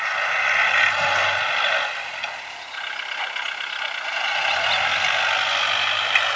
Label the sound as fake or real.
real